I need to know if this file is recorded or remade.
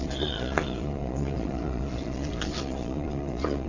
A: remade